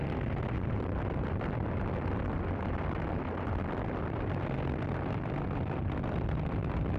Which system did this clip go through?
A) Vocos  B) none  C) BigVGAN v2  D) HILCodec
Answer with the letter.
C